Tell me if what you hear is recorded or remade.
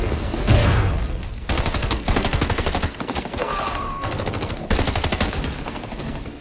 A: remade